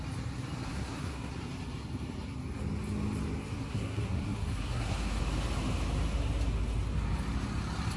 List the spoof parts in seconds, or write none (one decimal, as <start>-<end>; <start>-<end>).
0.7-1.3; 3.7-5.2